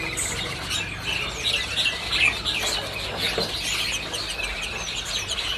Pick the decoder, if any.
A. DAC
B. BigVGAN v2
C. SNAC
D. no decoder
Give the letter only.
D